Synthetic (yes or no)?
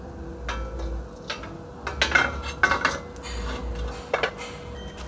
no